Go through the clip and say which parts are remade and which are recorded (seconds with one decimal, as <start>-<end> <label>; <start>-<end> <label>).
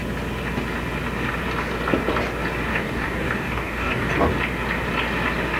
0.0-2.7 recorded; 2.7-4.1 remade; 4.1-5.6 recorded